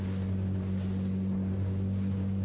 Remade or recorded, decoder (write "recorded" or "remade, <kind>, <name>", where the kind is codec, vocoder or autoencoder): recorded